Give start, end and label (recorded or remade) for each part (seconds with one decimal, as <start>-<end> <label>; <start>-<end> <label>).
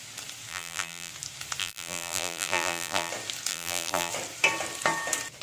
0.0-0.5 recorded; 0.5-1.1 remade; 1.1-1.6 recorded; 1.6-3.1 remade; 3.1-3.5 recorded; 3.5-4.1 remade; 4.1-5.4 recorded